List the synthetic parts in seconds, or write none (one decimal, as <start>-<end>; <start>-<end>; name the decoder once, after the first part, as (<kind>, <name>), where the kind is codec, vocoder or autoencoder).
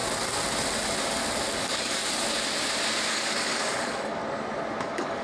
1.6-2.0 (codec, DAC); 3.1-4.2; 4.8-5.2